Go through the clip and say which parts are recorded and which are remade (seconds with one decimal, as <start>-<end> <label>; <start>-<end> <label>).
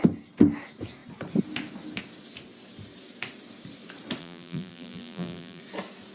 0.0-4.2 recorded; 4.2-5.6 remade; 5.6-6.1 recorded